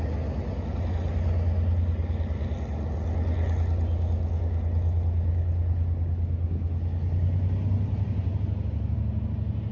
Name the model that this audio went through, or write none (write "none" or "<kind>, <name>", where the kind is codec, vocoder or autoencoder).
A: none